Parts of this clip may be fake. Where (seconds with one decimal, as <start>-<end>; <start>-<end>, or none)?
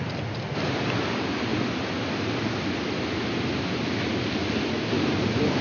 none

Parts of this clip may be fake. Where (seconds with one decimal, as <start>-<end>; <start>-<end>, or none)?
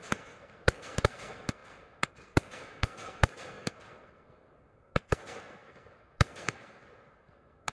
0.0-7.7